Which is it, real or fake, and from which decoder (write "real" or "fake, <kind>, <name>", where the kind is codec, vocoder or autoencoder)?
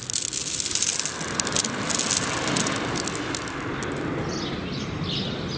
real